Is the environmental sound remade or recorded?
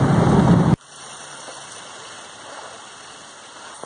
recorded